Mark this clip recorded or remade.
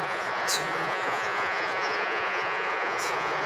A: remade